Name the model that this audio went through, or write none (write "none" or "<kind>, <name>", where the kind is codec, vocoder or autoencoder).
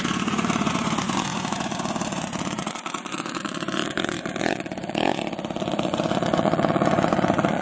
vocoder, Vocos